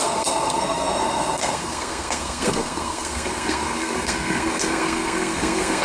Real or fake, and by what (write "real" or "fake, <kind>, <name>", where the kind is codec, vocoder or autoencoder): fake, codec, SNAC